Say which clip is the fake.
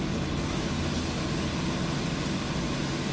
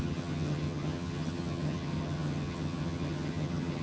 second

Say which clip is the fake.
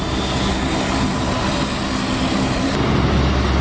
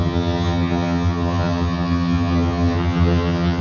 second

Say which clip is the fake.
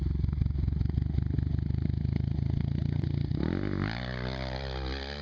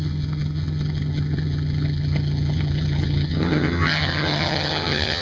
second